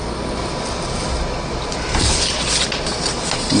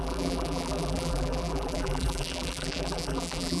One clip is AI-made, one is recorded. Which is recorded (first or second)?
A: first